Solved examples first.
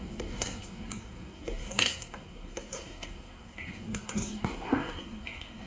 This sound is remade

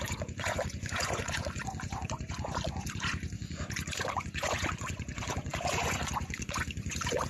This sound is remade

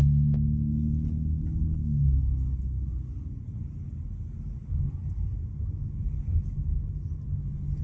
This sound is recorded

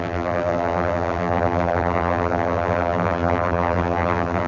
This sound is remade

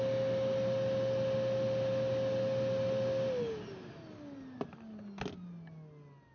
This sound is recorded